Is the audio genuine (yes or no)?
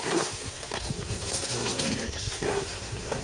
no